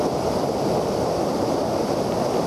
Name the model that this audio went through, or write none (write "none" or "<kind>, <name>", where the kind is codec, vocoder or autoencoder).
none